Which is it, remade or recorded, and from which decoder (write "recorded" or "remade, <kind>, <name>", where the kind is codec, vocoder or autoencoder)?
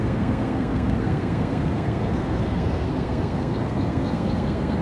remade, codec, SNAC